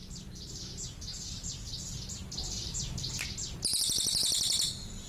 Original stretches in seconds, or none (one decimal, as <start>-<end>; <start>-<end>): 3.1-5.1